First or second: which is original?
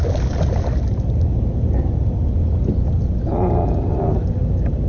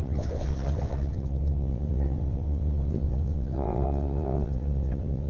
first